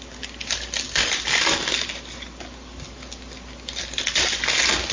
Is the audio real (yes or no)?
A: no